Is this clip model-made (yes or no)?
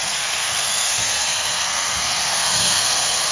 yes